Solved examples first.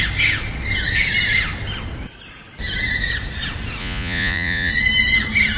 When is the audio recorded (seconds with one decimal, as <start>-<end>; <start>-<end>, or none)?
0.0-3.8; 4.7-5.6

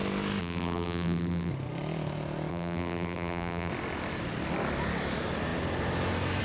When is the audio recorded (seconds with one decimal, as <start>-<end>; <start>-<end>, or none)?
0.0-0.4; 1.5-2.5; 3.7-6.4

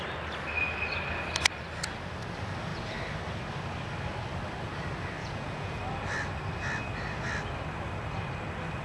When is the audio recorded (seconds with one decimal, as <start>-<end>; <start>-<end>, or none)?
0.0-5.2; 5.8-8.8

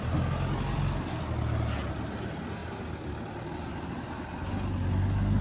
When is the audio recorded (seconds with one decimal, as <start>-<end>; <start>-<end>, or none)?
0.0-5.4

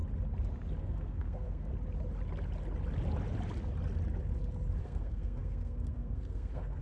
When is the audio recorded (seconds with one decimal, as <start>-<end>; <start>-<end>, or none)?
0.0-0.8; 1.7-4.8

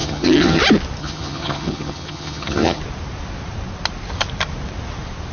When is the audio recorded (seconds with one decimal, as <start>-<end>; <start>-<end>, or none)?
0.6-1.0; 2.8-5.3

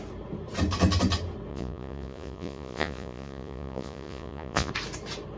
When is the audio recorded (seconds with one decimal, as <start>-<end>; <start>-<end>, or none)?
0.0-1.5; 4.7-5.4

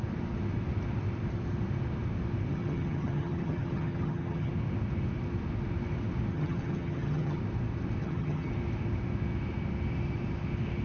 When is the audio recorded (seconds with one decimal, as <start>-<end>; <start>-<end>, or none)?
0.0-2.5; 4.5-6.3; 7.4-8.0; 8.5-10.8